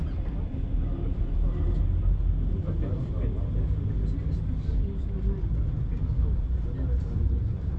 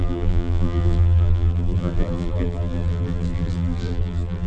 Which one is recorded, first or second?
first